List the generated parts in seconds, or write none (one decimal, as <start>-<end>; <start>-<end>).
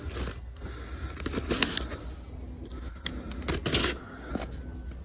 3.8-4.3